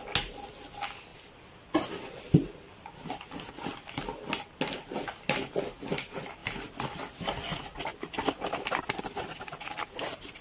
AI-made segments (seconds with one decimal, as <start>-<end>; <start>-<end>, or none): 1.1-3.5; 6.4-7.2; 7.9-8.8